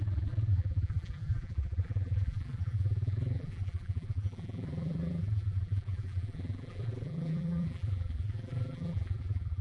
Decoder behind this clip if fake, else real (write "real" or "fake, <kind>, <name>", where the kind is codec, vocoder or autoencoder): fake, vocoder, BigVGAN v2